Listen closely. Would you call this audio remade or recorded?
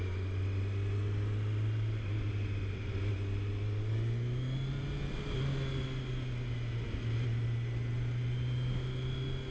recorded